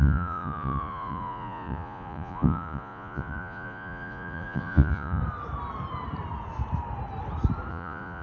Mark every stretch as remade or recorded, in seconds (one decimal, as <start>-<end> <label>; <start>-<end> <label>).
0.0-5.2 remade; 5.2-7.7 recorded; 7.7-8.2 remade